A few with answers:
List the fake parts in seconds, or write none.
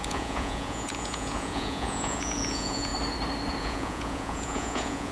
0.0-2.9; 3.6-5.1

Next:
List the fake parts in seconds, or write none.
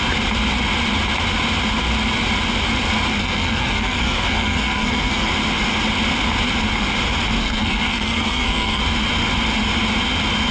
3.2-5.3; 7.4-8.8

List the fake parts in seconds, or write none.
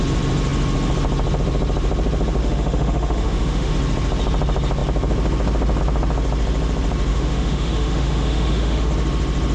2.4-3.7; 7.1-8.9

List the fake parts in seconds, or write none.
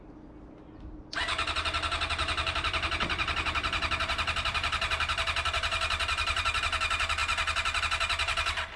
2.2-6.6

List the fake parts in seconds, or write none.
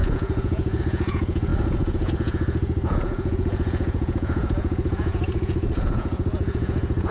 0.0-7.1